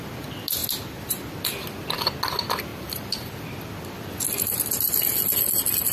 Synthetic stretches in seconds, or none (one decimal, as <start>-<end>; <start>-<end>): 2.7-3.4